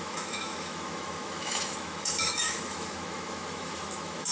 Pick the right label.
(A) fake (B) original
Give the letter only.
A